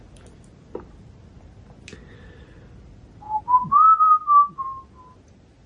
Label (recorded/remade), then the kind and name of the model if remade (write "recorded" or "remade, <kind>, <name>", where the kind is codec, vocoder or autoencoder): recorded